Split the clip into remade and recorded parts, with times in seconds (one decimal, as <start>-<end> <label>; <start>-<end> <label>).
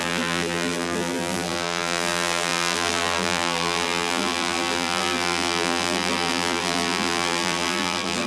0.0-8.3 remade